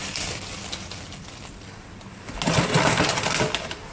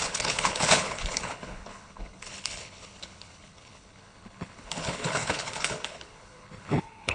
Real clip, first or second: first